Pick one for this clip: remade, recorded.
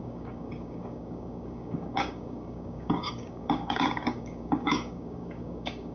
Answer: remade